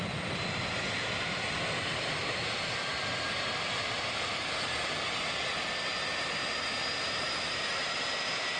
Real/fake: real